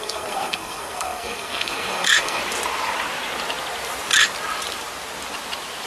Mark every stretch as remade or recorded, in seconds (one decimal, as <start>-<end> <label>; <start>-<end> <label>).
0.0-2.4 remade; 2.4-5.9 recorded